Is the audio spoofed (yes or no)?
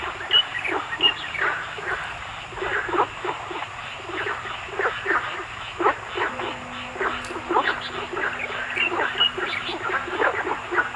no